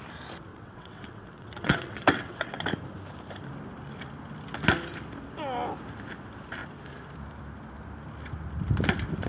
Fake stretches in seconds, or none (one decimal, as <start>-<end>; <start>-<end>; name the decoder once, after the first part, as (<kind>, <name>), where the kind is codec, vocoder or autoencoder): 0.5-2.6 (vocoder, WaveNeXt)